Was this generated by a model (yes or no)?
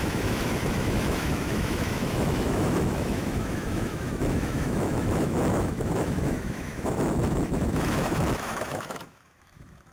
yes